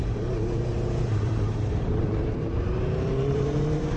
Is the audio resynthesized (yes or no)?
yes